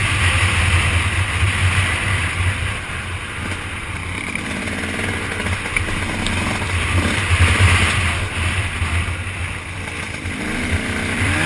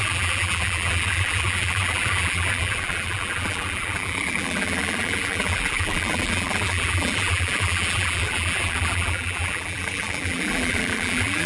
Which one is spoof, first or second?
second